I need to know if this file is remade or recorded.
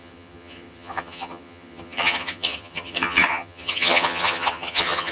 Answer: remade